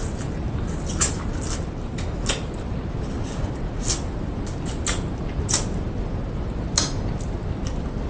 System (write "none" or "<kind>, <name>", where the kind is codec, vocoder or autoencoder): none